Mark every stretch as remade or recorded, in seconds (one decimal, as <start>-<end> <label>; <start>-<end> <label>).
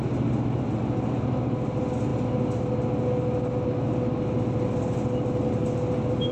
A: 0.0-6.3 recorded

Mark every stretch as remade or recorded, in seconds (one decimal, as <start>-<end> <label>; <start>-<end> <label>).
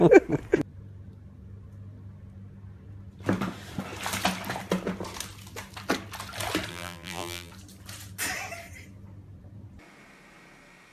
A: 0.0-6.7 recorded; 6.7-7.5 remade; 7.5-10.9 recorded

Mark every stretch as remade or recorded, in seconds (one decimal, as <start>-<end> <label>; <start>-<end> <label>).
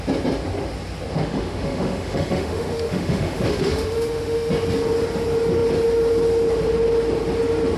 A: 0.0-1.1 recorded; 1.1-4.5 remade; 4.5-7.8 recorded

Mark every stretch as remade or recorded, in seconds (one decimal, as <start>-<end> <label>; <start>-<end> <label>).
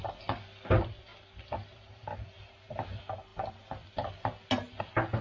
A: 0.0-5.2 recorded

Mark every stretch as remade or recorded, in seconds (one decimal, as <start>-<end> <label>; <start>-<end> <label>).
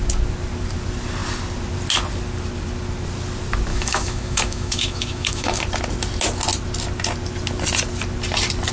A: 0.0-3.7 recorded; 3.7-5.6 remade; 5.6-8.7 recorded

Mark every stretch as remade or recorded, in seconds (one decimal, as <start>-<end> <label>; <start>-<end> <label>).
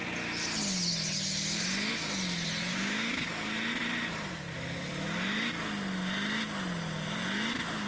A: 0.0-2.7 recorded; 2.7-3.3 remade; 3.3-7.9 recorded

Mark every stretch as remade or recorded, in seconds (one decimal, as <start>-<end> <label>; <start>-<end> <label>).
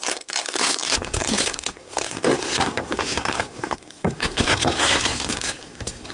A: 0.0-6.1 remade